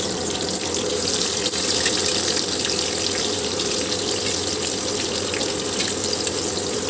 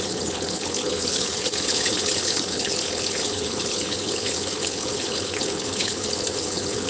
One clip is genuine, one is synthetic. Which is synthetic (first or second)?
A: second